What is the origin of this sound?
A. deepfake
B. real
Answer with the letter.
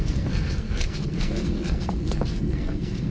A